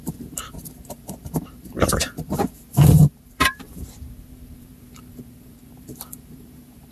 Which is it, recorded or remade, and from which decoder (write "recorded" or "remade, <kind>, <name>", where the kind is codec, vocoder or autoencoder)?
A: remade, vocoder, BigVGAN v2